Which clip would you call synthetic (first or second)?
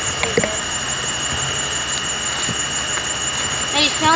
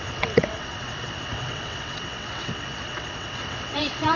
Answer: second